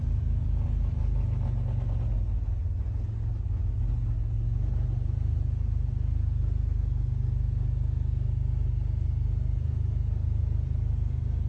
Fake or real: real